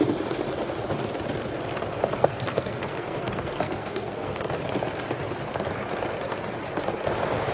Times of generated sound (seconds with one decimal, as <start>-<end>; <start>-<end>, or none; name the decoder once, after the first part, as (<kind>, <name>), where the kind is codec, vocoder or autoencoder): 2.2-4.5 (codec, SNAC)